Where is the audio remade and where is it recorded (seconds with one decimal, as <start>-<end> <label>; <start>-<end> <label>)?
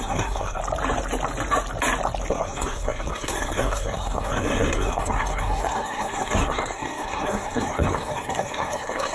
0.0-0.6 remade; 0.6-2.3 recorded; 2.3-9.1 remade